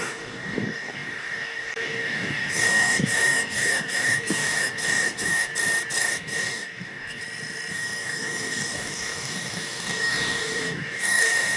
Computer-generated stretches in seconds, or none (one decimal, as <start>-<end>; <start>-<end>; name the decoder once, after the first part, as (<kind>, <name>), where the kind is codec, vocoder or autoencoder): 0.0-5.5 (codec, DAC); 6.0-7.2; 7.7-11.6